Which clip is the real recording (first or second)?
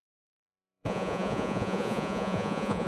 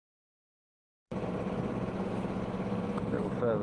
second